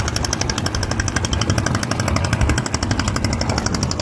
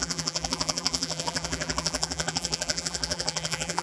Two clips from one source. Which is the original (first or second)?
first